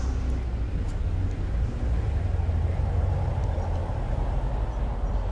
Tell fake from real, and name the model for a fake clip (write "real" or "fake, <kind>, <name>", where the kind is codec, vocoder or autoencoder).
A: real